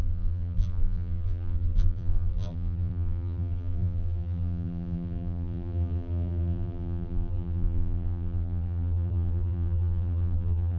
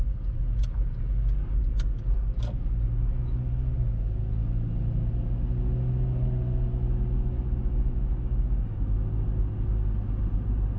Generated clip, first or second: first